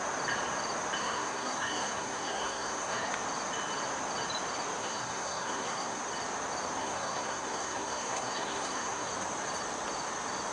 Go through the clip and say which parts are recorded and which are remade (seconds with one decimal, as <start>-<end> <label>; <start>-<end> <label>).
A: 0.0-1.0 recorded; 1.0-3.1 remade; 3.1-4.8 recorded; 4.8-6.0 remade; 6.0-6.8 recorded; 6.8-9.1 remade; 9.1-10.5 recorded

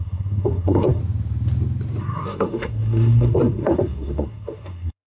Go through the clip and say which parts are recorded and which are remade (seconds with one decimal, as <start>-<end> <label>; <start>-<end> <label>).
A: 0.0-1.0 remade; 1.0-2.0 recorded; 2.0-5.1 remade

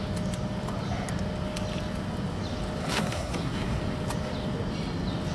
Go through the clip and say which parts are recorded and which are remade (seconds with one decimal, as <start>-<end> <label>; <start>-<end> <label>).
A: 0.0-2.8 recorded; 2.8-3.8 remade; 3.8-5.3 recorded

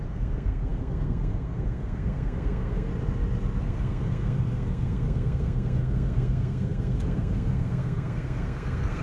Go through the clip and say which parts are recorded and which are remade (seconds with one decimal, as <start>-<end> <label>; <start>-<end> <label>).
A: 0.0-2.9 remade; 2.9-3.6 recorded; 3.6-9.0 remade

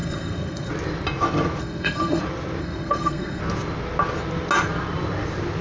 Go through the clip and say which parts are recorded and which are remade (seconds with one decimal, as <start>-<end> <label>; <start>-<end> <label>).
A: 0.0-0.7 remade; 0.7-1.6 recorded; 1.6-2.2 remade; 2.2-2.6 recorded; 2.6-3.4 remade; 3.4-5.6 recorded

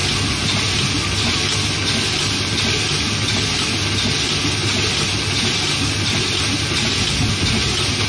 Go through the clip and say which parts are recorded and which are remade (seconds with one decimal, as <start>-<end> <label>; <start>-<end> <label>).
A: 0.0-8.1 recorded

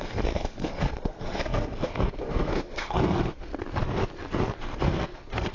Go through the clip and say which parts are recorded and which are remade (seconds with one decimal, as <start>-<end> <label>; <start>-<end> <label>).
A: 0.0-3.5 remade; 3.5-4.6 recorded; 4.6-5.5 remade

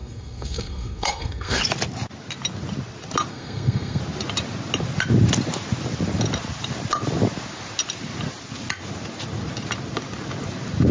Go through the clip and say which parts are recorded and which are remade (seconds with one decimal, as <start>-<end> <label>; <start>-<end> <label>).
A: 0.0-1.6 remade; 1.6-3.3 recorded; 3.3-4.0 remade; 4.0-10.9 recorded